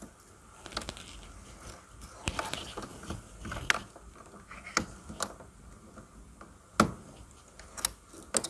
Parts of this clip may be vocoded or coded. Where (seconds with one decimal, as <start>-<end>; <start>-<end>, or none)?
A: none